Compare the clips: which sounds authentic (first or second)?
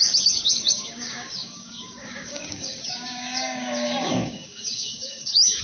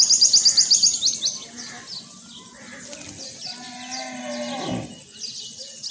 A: second